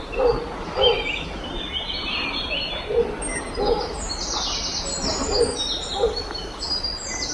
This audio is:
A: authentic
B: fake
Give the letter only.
A